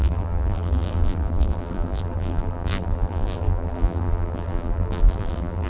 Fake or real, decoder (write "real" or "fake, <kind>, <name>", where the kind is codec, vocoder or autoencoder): fake, vocoder, BigVGAN v2